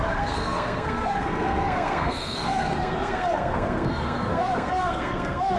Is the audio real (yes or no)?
no